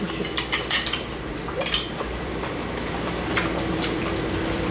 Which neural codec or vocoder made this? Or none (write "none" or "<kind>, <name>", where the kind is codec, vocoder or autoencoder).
vocoder, BigVGAN v2